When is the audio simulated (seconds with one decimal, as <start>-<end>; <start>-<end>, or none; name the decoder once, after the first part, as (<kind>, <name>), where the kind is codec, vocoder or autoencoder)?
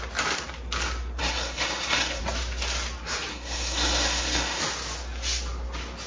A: 1.2-2.2 (codec, SNAC); 3.3-4.6